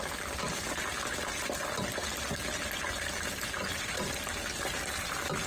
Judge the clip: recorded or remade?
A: recorded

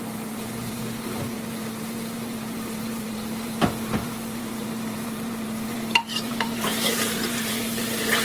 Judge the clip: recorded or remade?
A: remade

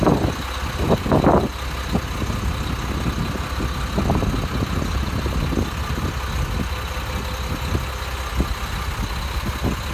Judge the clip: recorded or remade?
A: recorded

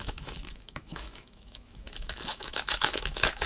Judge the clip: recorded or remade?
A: remade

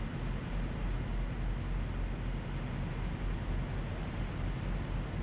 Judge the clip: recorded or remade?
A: recorded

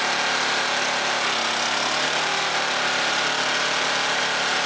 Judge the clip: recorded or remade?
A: recorded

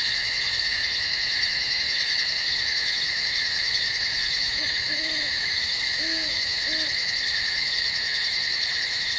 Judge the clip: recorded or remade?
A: remade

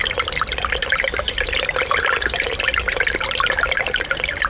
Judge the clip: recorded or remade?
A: recorded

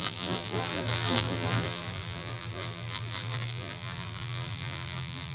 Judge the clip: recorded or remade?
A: remade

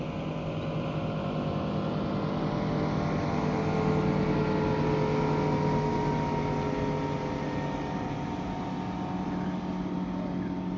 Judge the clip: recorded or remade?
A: recorded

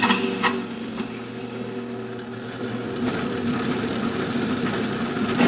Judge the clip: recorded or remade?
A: recorded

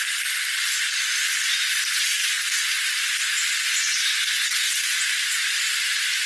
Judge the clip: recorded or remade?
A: recorded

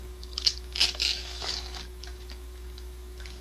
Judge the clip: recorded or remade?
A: remade